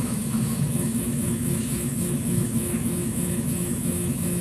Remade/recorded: remade